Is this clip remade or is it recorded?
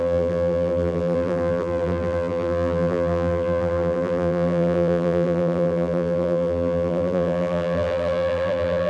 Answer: remade